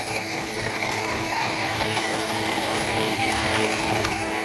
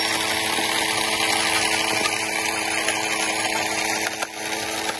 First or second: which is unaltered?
second